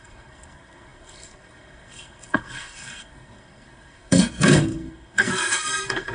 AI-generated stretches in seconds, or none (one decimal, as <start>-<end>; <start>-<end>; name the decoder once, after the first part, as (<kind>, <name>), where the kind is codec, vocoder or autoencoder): 0.0-6.1 (codec, SNAC)